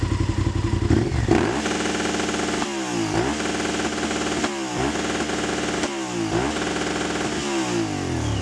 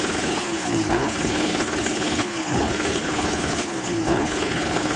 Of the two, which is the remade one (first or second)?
second